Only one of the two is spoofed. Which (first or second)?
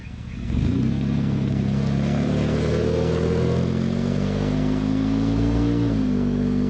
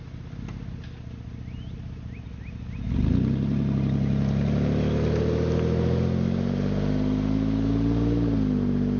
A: first